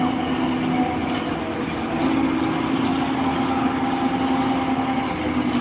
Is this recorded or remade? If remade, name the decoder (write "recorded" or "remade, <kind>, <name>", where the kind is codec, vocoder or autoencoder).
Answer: recorded